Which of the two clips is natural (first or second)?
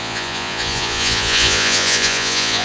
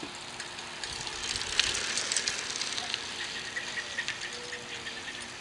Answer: second